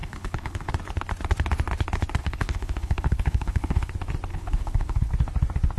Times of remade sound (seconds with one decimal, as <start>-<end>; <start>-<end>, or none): 0.0-0.7; 2.2-3.9; 4.3-5.1